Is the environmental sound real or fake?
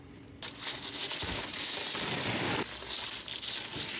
real